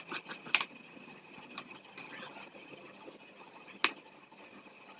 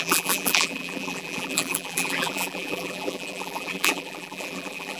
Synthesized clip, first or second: second